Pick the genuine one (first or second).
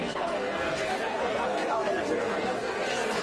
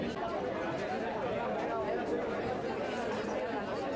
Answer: second